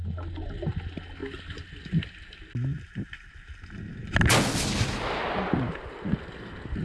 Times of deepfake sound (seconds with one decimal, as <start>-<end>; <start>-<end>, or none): none